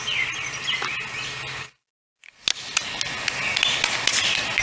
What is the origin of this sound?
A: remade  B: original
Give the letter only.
B